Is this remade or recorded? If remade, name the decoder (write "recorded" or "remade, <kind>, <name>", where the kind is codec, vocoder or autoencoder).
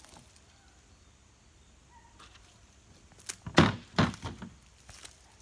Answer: recorded